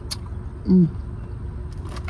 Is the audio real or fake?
real